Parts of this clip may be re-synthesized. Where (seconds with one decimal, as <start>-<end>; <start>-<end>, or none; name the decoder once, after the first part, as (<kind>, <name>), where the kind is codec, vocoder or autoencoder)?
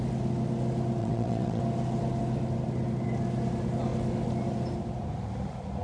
1.0-1.6 (vocoder, WaveNeXt)